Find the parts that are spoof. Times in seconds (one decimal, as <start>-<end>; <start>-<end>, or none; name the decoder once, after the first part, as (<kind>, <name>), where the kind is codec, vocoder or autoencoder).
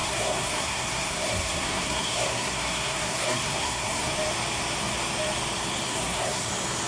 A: 0.0-4.1 (codec, SNAC); 5.9-6.5